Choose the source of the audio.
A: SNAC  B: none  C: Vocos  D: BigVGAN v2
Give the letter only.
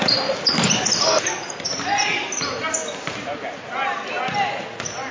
B